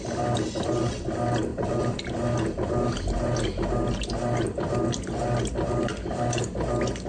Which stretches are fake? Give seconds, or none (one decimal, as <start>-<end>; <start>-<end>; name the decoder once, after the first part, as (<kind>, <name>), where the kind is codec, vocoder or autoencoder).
none

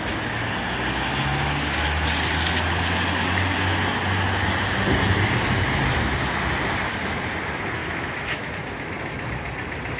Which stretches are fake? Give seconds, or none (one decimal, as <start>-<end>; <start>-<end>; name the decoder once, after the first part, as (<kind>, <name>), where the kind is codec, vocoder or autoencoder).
7.8-8.5 (autoencoder, DAC-VAE)

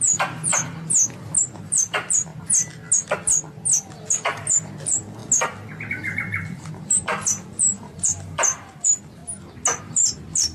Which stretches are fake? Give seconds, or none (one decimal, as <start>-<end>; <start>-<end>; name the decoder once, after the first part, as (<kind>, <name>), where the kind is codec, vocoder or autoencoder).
0.0-0.5 (vocoder, BigVGAN v2); 1.4-2.3; 4.1-5.2; 5.9-9.2; 9.8-10.5